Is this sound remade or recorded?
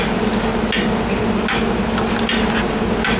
recorded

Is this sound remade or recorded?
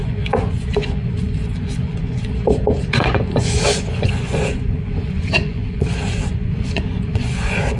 remade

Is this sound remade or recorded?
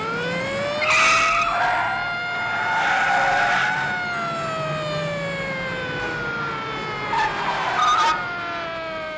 recorded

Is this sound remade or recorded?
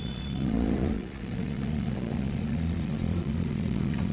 remade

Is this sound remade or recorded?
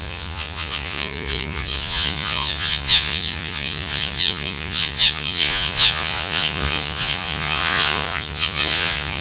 remade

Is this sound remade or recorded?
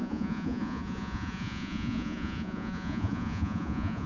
remade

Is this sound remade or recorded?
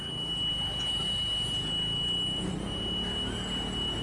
recorded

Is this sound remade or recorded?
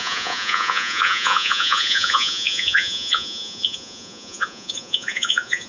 remade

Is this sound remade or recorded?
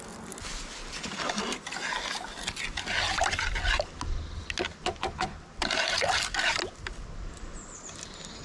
recorded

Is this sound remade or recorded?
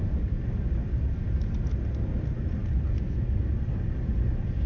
recorded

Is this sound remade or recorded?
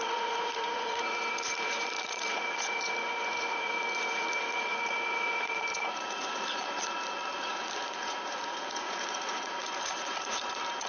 remade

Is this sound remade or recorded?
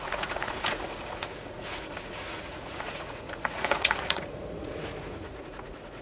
remade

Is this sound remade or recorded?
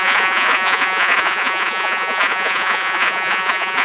remade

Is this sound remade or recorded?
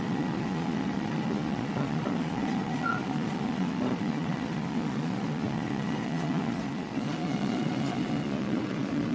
remade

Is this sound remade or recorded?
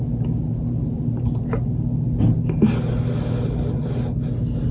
recorded